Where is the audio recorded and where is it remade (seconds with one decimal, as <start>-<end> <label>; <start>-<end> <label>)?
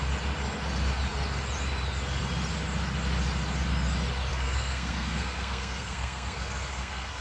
0.0-4.3 recorded; 4.3-7.2 remade